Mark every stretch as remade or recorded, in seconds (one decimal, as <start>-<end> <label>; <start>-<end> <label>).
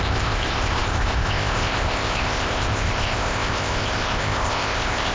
0.0-5.1 remade